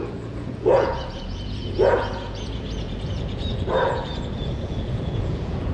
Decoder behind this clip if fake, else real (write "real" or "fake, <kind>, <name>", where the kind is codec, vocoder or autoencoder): fake, vocoder, Vocos